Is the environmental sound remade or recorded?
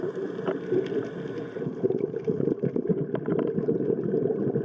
recorded